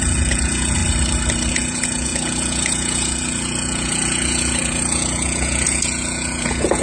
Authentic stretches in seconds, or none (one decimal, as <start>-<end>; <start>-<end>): 0.8-1.5